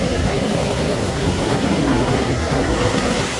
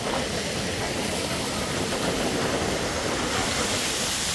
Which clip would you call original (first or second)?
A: second